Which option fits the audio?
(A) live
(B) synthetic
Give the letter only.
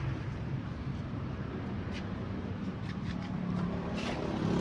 B